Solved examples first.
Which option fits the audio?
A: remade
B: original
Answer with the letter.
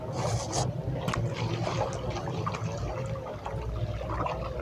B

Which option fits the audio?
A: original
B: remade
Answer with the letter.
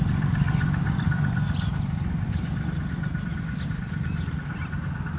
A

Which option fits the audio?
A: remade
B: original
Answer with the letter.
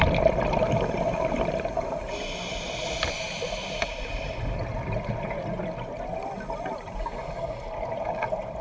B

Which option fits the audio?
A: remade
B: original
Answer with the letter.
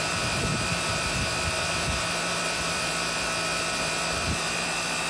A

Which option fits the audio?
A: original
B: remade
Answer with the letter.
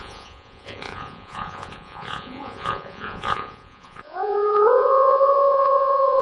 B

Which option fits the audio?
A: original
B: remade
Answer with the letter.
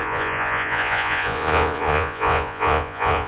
B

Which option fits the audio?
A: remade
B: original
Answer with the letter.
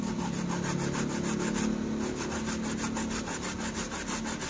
B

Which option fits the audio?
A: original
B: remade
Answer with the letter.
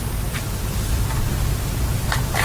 A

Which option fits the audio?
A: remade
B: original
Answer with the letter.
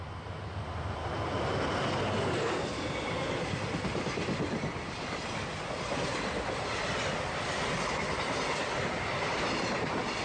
B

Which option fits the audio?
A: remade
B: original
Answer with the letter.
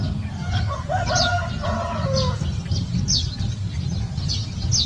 B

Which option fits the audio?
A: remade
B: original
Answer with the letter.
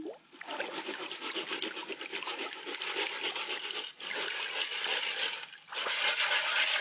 B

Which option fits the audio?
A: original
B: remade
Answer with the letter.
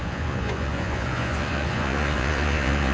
B